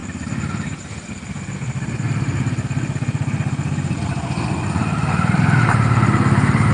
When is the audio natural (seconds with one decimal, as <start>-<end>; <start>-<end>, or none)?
0.0-6.7